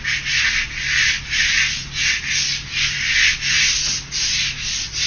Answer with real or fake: real